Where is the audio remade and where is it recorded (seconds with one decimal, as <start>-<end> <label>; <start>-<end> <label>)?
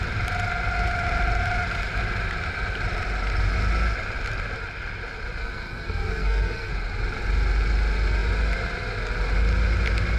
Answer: 0.0-5.4 recorded; 5.4-6.7 remade; 6.7-10.2 recorded